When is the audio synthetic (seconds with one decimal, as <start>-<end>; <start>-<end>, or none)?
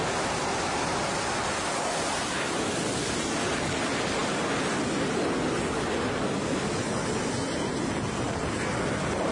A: none